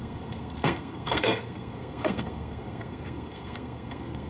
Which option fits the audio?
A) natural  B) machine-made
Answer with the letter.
B